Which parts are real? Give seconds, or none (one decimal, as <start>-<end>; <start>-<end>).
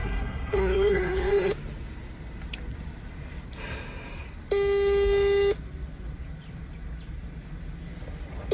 1.5-8.5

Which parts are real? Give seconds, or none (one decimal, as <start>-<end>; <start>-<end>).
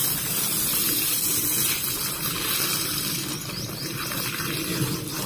0.0-5.3